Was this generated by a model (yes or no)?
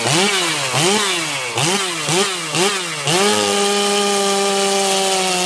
no